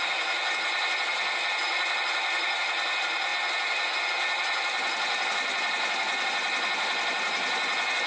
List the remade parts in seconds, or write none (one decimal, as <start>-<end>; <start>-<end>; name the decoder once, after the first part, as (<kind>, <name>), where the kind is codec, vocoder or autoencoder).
none